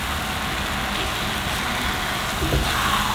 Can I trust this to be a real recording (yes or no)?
yes